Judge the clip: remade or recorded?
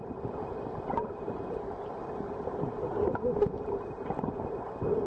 recorded